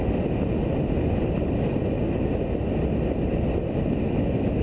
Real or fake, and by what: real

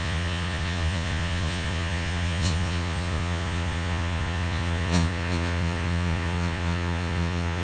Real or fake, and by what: fake, vocoder, Vocos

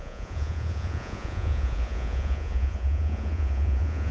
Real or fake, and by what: fake, vocoder, Vocos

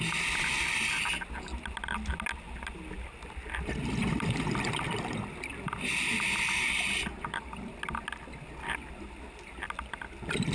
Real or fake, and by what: real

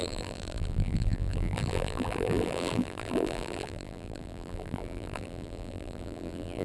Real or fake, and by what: fake, vocoder, BigVGAN v2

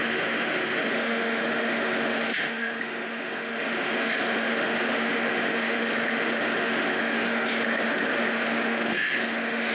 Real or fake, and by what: fake, autoencoder, DAC-VAE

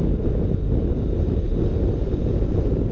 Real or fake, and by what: real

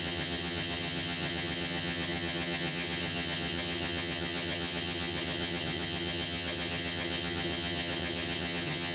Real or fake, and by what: fake, vocoder, HiFi-GAN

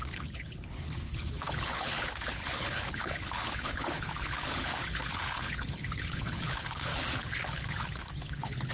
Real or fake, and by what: fake, codec, HILCodec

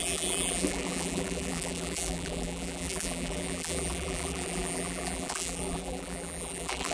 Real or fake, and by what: fake, vocoder, BigVGAN v2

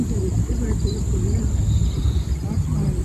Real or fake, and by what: real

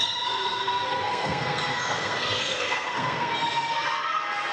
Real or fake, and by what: fake, codec, SNAC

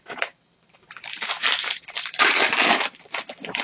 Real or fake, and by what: fake, vocoder, BigVGAN v2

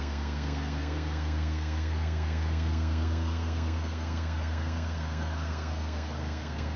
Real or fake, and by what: fake, codec, SNAC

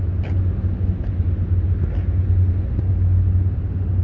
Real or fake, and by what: real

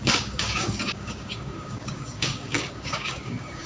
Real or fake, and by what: fake, codec, DAC